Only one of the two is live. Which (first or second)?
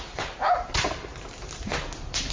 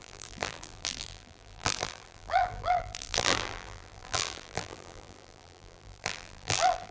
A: first